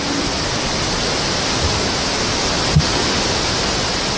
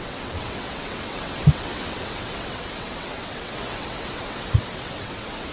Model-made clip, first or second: second